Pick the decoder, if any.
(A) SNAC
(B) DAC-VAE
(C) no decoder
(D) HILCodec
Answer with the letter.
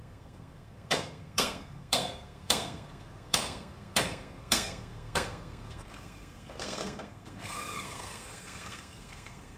A